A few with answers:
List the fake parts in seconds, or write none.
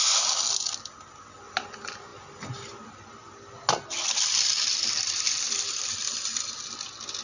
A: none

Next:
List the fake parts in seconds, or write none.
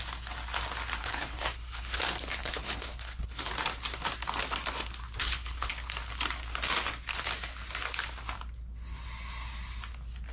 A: 1.0-2.0 (codec, HILCodec); 2.4-3.5; 5.2-5.7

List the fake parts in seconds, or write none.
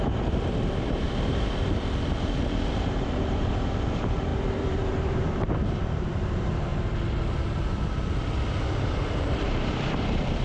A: 0.0-6.7 (vocoder, BigVGAN v2); 9.0-10.4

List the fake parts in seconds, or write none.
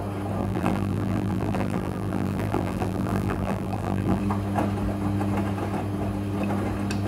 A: 0.4-4.2 (vocoder, BigVGAN v2)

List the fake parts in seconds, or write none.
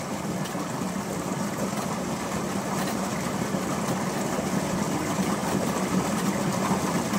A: none